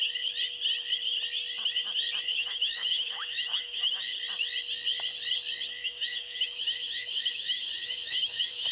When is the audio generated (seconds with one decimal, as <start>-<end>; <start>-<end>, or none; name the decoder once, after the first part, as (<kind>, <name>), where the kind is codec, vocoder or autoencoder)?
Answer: 2.3-4.2 (autoencoder, DAC-VAE); 5.8-8.7